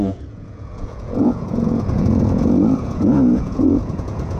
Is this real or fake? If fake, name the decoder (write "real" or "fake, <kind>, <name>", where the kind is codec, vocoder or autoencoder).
fake, vocoder, Vocos